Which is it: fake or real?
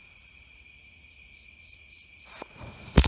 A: fake